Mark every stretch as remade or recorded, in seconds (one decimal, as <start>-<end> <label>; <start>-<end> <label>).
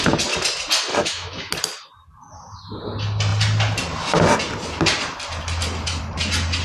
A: 0.0-0.9 recorded; 0.9-1.5 remade; 1.5-6.6 recorded